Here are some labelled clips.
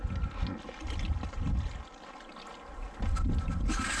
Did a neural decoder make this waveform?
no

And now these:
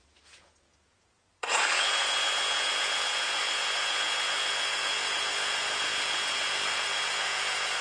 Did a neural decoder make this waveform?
yes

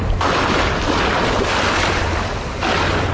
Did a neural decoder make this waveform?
no